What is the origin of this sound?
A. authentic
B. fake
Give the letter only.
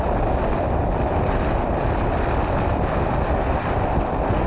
A